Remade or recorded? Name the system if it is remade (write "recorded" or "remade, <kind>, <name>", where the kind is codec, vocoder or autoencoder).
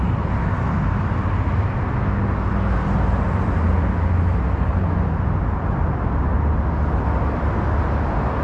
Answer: recorded